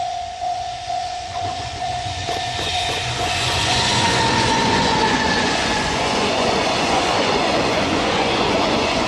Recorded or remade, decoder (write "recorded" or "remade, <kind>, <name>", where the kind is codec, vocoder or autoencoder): remade, vocoder, Vocos